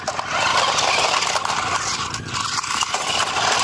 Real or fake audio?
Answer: real